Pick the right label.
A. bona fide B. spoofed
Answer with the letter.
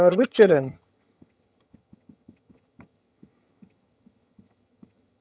B